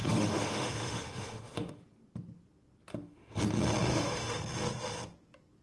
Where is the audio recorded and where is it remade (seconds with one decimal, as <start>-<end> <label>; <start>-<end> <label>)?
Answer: 0.0-1.8 remade; 1.8-2.9 recorded; 2.9-3.4 remade; 3.4-3.9 recorded; 3.9-4.4 remade; 4.4-5.6 recorded